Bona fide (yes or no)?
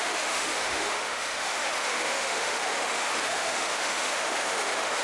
no